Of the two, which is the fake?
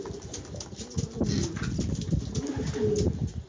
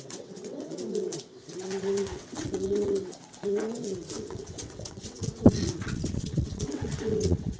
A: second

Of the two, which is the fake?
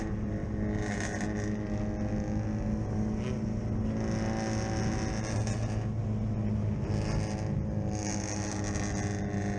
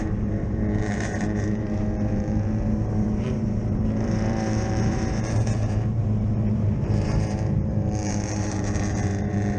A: second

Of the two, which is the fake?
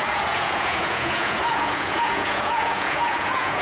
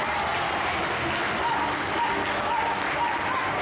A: first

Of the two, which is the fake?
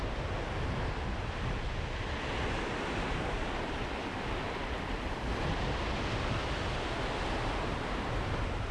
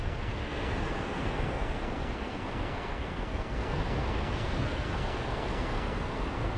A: second